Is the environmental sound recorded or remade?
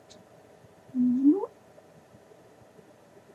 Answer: remade